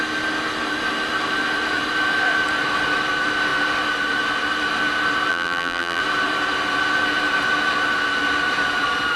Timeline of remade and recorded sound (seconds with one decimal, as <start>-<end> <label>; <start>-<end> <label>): 0.0-5.3 recorded; 5.3-6.0 remade; 6.0-9.2 recorded